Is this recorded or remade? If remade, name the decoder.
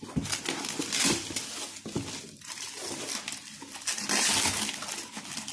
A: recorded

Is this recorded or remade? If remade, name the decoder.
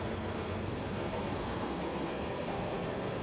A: remade, codec, SNAC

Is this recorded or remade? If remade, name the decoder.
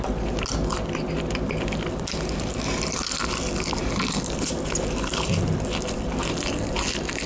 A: recorded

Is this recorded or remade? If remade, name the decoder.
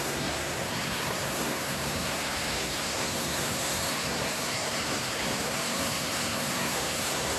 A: remade, codec, SNAC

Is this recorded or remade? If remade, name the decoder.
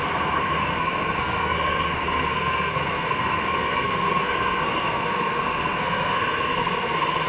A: remade, codec, SNAC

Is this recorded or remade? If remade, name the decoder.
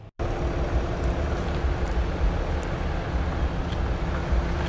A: recorded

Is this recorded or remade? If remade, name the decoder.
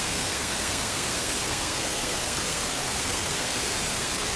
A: remade, codec, SNAC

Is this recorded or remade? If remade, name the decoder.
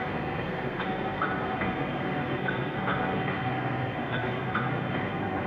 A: remade, codec, SNAC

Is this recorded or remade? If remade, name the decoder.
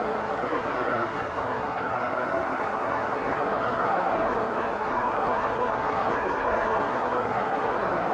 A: remade, codec, SNAC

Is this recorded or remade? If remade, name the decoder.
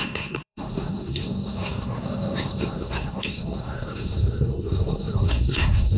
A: remade, codec, SNAC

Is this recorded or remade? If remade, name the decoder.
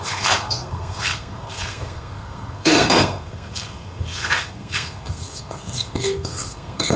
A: remade, codec, SNAC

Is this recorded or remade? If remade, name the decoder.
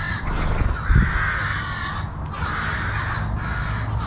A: recorded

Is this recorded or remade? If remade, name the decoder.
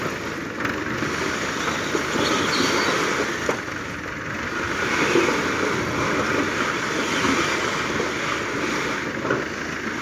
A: recorded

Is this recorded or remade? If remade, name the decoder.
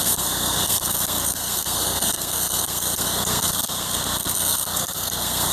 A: remade, codec, SNAC